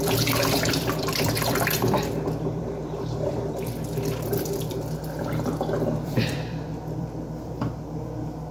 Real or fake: fake